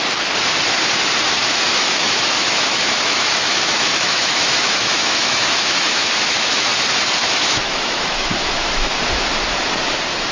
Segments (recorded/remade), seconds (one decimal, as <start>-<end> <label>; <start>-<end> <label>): 0.0-1.7 recorded; 1.7-6.7 remade; 6.7-7.2 recorded; 7.2-9.0 remade; 9.0-10.3 recorded